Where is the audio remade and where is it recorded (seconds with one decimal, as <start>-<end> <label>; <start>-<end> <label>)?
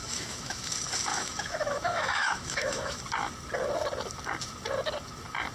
0.0-0.7 remade; 0.7-1.1 recorded; 1.1-3.0 remade; 3.0-5.5 recorded